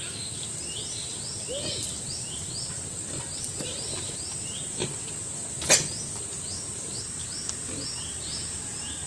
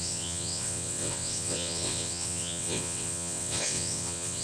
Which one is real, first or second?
first